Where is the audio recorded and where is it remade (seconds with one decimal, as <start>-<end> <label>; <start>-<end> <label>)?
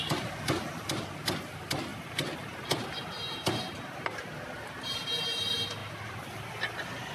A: 0.0-1.9 recorded; 1.9-3.0 remade; 3.0-5.8 recorded; 5.8-6.4 remade; 6.4-7.1 recorded